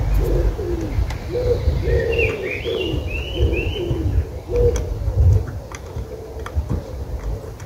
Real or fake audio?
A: real